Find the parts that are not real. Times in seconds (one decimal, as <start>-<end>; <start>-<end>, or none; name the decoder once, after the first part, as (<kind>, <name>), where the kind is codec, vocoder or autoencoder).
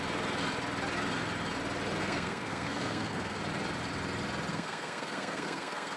2.0-3.4 (codec, SNAC); 4.5-6.0